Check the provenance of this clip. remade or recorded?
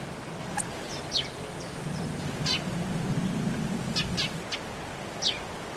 recorded